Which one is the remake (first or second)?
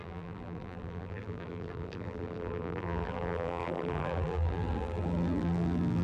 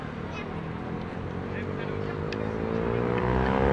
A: first